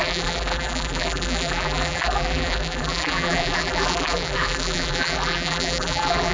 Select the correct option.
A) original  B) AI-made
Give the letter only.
B